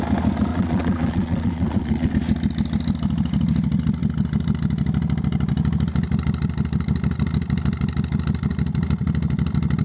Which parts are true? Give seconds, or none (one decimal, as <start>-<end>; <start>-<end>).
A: 0.0-0.5; 2.1-9.8